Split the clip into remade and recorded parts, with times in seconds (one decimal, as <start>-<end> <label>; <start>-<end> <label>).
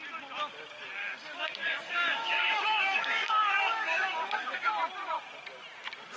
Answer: 0.0-1.0 recorded; 1.0-4.7 remade; 4.7-6.2 recorded